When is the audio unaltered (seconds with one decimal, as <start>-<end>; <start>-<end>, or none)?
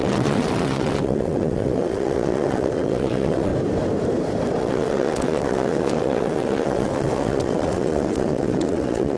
3.5-4.6